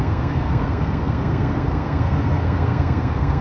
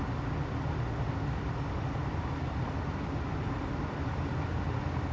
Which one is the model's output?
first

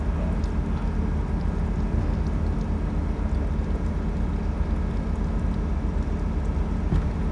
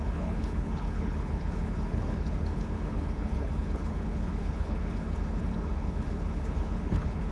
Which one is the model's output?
second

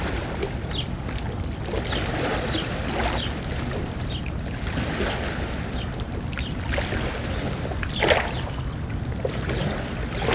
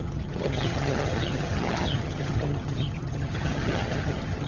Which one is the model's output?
second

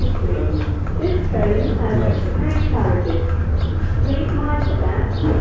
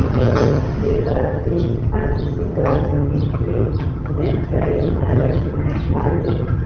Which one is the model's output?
second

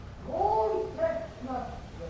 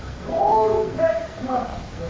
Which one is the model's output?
second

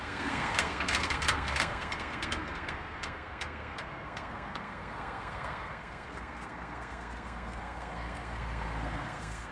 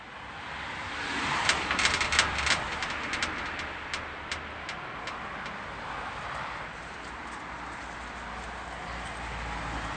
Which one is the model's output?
first